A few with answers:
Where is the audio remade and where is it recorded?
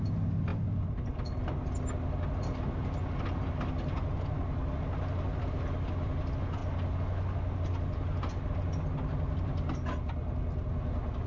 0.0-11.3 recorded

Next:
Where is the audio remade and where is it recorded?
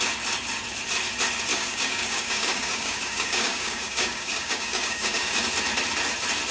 0.0-1.5 recorded; 1.5-5.4 remade; 5.4-6.5 recorded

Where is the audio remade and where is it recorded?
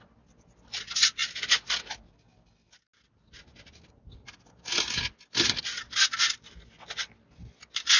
0.0-8.0 recorded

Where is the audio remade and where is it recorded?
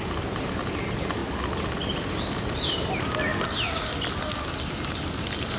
0.0-5.6 recorded